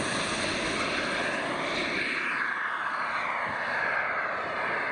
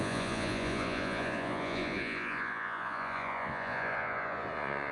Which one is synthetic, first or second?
second